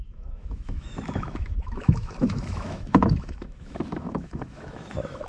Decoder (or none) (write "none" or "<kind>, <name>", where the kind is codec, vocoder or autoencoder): autoencoder, DAC-VAE